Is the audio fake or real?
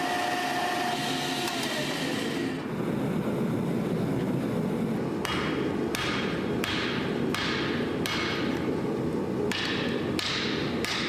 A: real